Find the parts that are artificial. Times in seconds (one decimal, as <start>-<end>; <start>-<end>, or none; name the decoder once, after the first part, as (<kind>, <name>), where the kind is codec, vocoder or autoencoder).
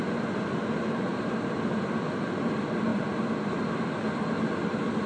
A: 0.6-1.6 (vocoder, BigVGAN v2); 2.9-3.6